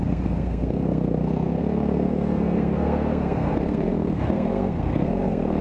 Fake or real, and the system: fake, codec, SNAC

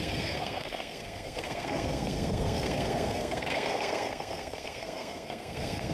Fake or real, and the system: fake, codec, SNAC